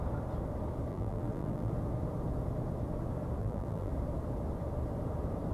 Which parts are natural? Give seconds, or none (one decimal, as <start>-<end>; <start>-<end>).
0.0-0.9; 1.7-3.4; 3.9-5.5